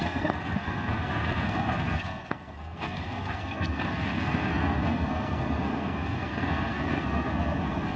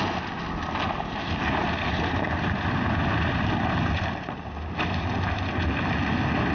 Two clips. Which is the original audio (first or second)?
second